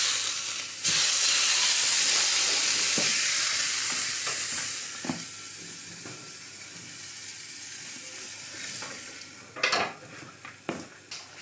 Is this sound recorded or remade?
recorded